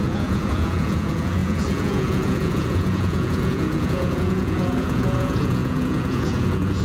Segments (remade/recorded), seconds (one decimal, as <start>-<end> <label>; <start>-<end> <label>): 0.0-6.8 remade